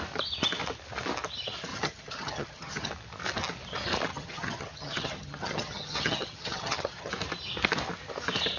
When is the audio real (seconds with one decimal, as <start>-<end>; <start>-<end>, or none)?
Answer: 0.0-1.7; 2.9-4.1; 7.1-8.6